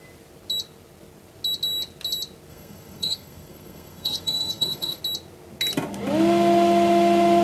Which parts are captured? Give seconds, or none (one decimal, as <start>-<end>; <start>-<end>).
0.0-2.5; 5.0-7.4